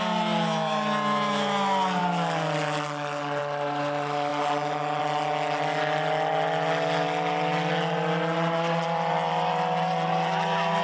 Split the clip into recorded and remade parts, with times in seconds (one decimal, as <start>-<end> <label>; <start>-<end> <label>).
0.0-10.8 recorded